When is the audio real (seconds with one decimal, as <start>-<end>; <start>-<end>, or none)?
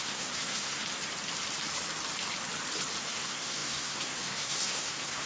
0.8-3.0